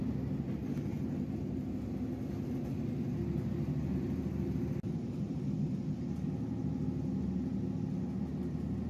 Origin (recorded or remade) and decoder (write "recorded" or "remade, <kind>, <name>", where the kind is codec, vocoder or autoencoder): recorded